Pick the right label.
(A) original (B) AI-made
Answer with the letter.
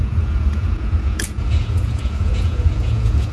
B